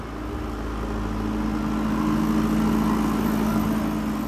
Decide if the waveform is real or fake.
real